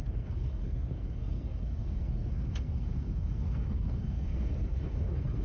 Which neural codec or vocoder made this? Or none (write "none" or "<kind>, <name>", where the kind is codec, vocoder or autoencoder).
codec, SNAC